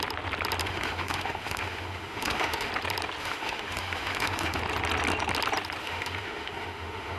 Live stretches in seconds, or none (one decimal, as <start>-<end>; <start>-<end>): 0.0-0.6; 2.7-3.2; 4.6-5.8